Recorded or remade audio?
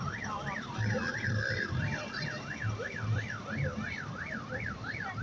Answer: remade